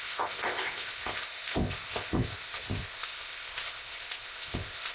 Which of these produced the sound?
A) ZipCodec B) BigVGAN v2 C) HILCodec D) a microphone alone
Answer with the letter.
A